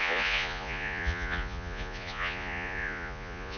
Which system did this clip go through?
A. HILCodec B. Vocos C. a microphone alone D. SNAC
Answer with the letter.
B